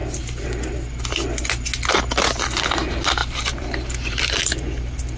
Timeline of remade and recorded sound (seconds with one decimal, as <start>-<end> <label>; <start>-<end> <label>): 0.0-3.2 recorded; 3.2-4.3 remade; 4.3-5.2 recorded